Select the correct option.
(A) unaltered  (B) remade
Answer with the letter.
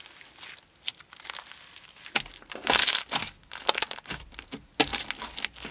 A